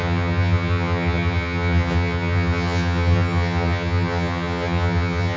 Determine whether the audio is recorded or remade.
remade